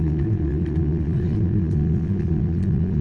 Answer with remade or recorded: remade